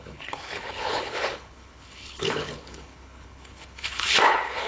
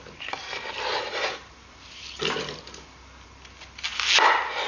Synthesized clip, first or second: first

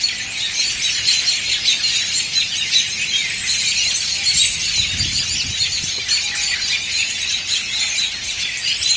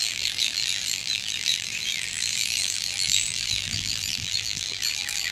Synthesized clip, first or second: second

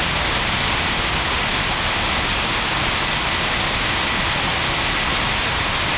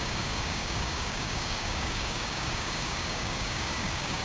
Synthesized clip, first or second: second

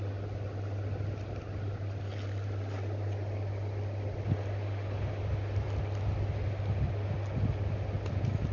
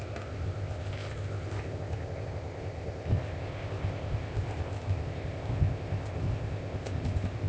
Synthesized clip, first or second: second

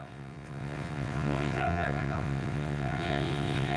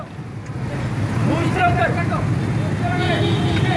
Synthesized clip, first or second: first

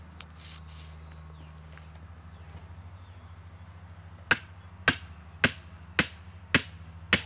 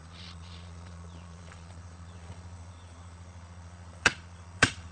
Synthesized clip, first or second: second